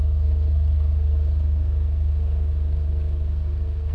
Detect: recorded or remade remade